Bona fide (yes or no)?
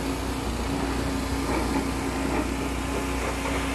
yes